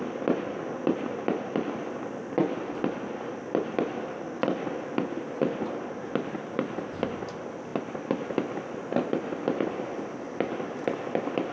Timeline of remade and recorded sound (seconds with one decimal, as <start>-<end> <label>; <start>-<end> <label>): 0.0-11.5 recorded